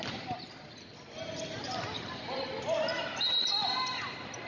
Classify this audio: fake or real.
real